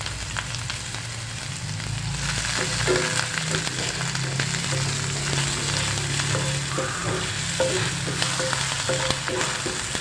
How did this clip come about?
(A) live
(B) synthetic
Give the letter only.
A